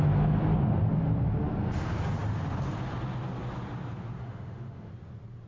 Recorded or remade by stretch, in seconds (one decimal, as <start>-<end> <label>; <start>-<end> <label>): 0.0-4.2 recorded; 4.2-4.9 remade; 4.9-5.5 recorded